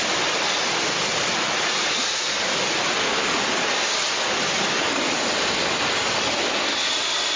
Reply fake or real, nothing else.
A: real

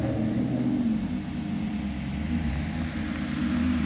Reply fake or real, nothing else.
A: real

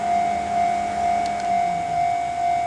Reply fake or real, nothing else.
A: real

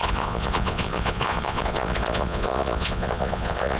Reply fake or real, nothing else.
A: fake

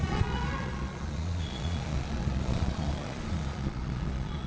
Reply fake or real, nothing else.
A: fake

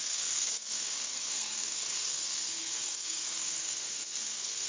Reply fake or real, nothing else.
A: fake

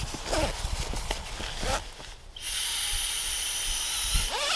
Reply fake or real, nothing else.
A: real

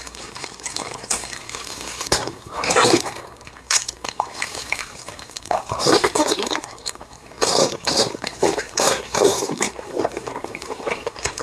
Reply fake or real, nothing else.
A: fake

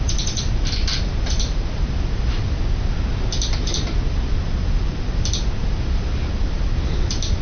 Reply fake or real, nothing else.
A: real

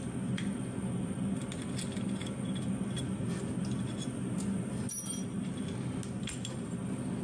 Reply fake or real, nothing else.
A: real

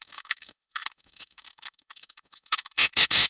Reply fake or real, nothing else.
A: fake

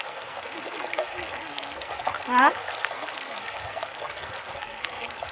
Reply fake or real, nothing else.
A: fake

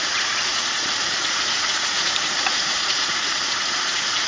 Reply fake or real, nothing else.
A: fake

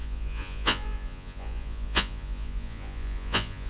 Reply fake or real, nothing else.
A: fake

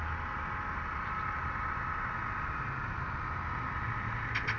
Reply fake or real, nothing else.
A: real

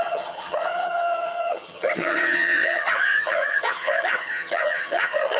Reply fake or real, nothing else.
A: fake